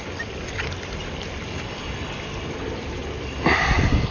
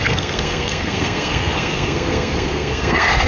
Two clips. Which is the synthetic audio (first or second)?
second